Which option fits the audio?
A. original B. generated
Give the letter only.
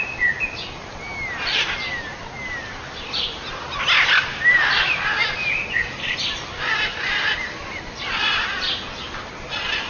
A